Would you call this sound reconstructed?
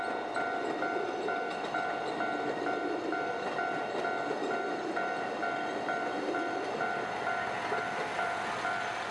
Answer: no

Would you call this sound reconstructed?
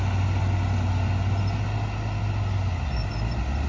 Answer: no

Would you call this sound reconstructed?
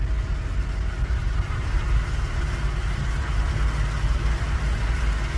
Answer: no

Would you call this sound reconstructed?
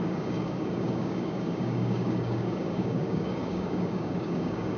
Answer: yes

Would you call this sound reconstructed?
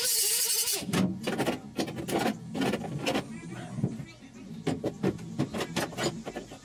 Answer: no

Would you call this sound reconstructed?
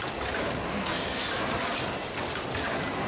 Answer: no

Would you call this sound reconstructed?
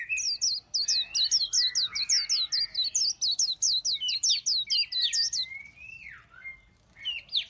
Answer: no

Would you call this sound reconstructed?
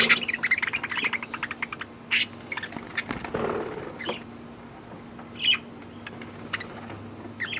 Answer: no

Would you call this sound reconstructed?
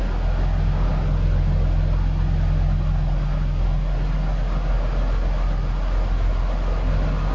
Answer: no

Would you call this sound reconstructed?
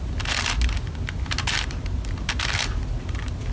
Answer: no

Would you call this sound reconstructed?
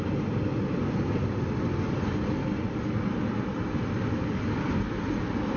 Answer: no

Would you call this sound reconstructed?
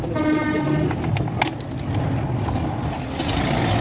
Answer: no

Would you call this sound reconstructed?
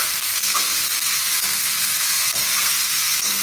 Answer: yes